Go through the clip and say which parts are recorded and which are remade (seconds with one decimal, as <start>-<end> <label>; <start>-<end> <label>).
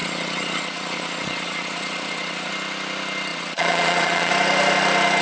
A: 0.0-2.5 remade; 2.5-3.3 recorded; 3.3-4.3 remade; 4.3-5.2 recorded